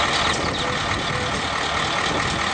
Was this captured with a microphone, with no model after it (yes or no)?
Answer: yes